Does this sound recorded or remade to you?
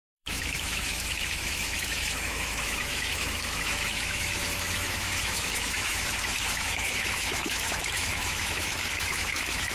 remade